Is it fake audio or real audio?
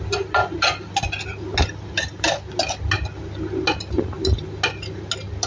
real